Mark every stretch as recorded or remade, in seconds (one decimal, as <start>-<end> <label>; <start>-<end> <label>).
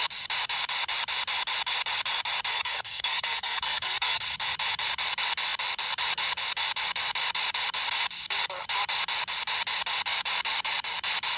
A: 0.0-2.5 recorded; 2.5-4.2 remade; 4.2-11.4 recorded